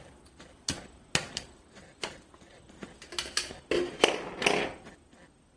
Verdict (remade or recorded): recorded